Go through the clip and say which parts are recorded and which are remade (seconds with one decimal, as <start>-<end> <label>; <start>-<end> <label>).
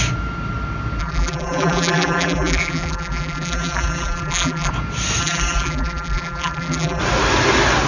0.0-1.0 recorded; 1.0-4.7 remade; 4.7-5.2 recorded; 5.2-7.0 remade; 7.0-7.9 recorded